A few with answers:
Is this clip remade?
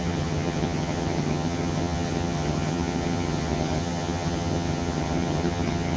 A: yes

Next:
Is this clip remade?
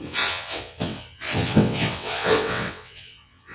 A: yes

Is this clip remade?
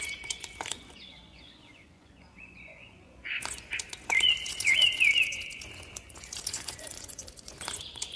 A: yes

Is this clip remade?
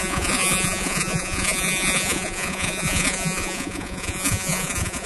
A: yes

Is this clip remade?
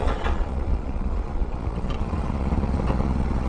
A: yes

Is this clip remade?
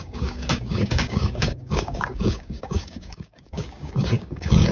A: yes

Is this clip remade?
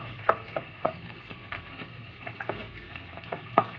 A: yes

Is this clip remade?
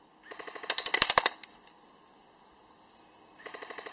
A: no